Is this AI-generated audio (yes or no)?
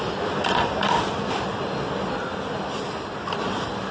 no